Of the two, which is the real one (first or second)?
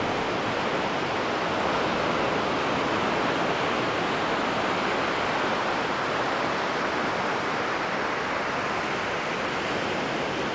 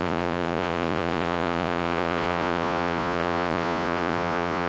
first